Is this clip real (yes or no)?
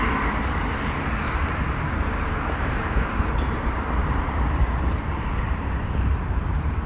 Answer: no